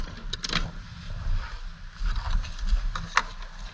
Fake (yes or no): no